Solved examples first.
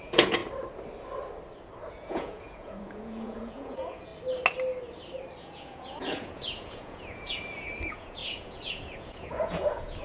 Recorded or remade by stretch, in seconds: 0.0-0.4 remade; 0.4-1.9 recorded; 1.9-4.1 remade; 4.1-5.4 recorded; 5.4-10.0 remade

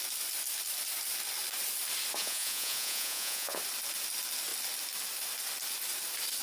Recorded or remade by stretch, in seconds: 0.0-2.2 recorded; 2.2-3.6 remade; 3.6-6.4 recorded

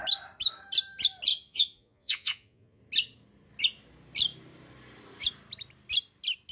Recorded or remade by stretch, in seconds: 0.0-1.3 recorded; 1.3-2.8 remade; 2.8-6.5 recorded

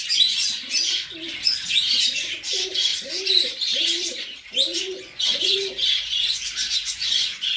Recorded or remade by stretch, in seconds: 0.0-4.7 recorded; 4.7-7.6 remade

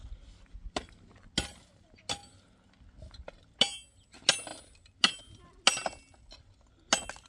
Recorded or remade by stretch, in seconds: 0.0-7.3 recorded

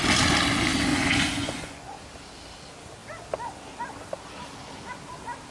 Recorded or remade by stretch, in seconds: 0.0-0.9 recorded; 0.9-2.0 remade; 2.0-5.5 recorded

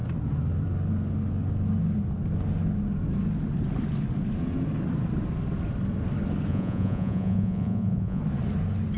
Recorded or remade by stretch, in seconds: 0.0-6.5 recorded; 6.5-8.2 remade; 8.2-9.0 recorded